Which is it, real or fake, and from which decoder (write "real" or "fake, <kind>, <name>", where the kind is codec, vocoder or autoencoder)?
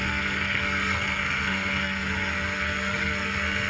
fake, codec, SNAC